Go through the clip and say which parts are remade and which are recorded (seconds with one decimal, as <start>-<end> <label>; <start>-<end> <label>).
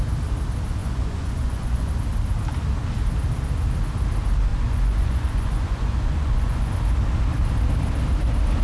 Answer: 0.0-0.8 recorded; 0.8-1.9 remade; 1.9-4.5 recorded; 4.5-6.7 remade; 6.7-8.6 recorded